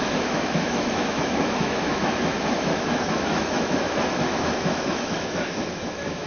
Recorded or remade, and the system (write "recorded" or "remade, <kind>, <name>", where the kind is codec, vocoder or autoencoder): remade, autoencoder, DAC-VAE